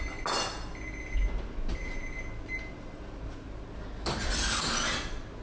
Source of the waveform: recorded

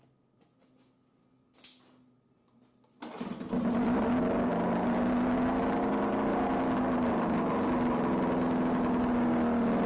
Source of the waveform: recorded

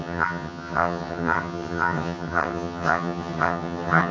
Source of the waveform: remade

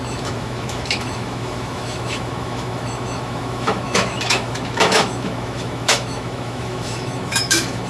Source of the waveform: remade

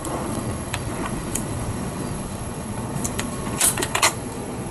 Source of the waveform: remade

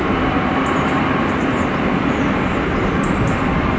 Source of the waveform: recorded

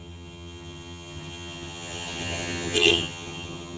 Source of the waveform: remade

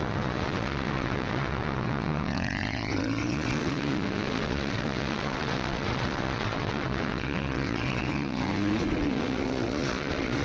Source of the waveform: remade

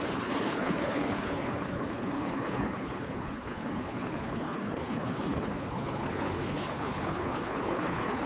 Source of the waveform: remade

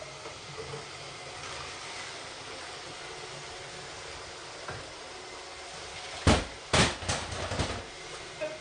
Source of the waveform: recorded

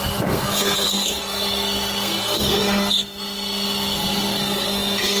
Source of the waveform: remade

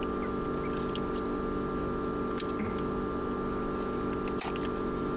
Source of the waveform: recorded